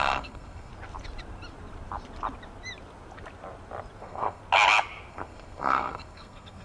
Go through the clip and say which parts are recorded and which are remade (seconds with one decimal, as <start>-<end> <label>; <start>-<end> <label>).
0.0-0.7 remade; 0.7-4.0 recorded; 4.0-4.4 remade; 4.4-5.1 recorded; 5.1-6.6 remade